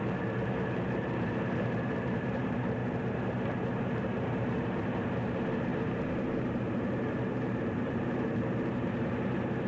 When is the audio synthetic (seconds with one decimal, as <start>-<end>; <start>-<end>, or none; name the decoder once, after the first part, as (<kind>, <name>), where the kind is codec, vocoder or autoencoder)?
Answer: 0.0-2.8 (vocoder, BigVGAN v2); 3.3-9.7